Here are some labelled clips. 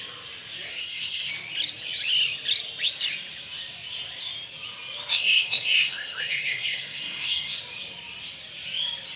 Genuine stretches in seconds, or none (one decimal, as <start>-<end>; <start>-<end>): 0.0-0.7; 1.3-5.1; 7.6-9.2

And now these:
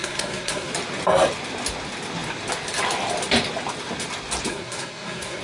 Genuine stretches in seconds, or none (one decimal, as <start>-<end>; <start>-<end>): 0.7-4.5

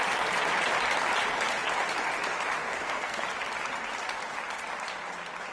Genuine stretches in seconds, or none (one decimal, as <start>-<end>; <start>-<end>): 0.0-2.6; 3.2-5.5

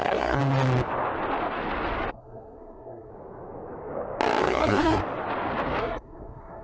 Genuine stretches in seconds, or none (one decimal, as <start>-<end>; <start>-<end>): 0.4-2.1; 3.1-4.4; 5.0-5.8